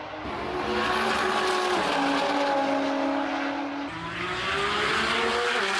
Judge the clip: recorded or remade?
recorded